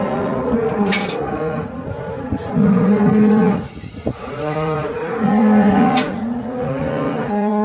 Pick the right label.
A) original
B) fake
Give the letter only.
B